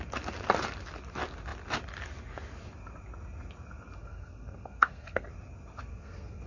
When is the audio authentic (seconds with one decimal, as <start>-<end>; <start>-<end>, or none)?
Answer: 0.0-4.0; 5.3-5.9